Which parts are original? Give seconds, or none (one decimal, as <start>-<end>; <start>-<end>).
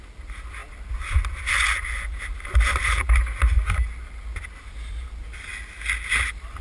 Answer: 0.0-6.6